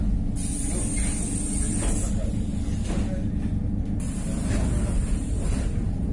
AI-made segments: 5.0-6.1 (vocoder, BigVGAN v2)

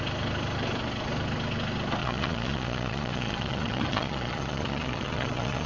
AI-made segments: 2.0-5.7 (vocoder, Vocos)

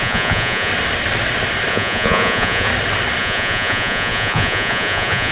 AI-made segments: 0.0-0.7 (vocoder, Vocos); 1.7-2.7; 3.2-5.3

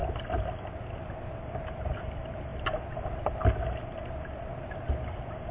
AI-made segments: none

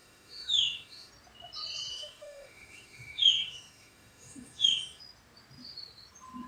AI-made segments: 0.0-1.1 (autoencoder, DAC-VAE); 1.9-5.0

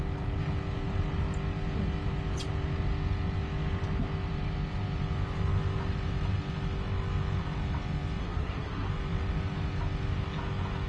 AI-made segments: 8.2-8.9 (codec, SNAC)